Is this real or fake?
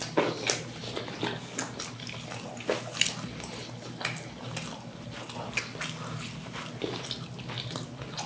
real